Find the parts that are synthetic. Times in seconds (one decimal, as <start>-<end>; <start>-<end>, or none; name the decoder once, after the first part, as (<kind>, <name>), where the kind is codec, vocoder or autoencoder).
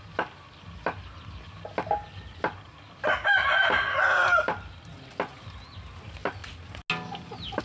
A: none